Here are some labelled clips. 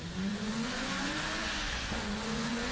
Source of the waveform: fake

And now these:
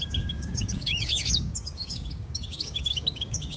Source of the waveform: fake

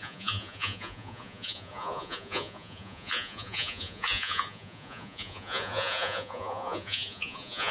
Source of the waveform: fake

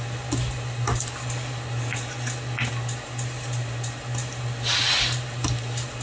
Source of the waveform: real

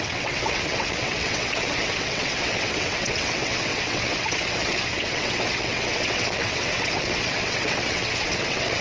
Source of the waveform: fake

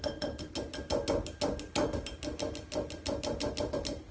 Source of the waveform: real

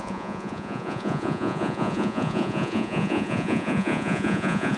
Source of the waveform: fake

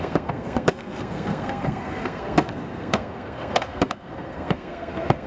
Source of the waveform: fake